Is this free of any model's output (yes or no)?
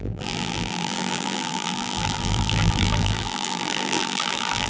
no